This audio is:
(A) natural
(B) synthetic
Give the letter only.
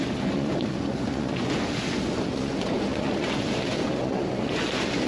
B